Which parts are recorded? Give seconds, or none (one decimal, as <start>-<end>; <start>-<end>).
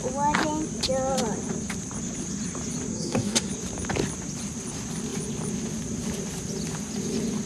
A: 0.0-2.9; 3.5-7.5